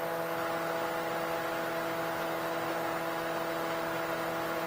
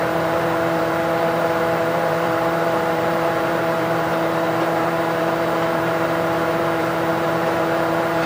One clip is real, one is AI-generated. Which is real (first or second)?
first